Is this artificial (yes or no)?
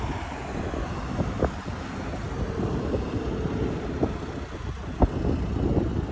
no